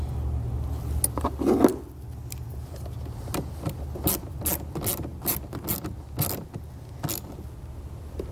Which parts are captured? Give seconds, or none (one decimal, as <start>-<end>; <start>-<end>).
0.0-8.3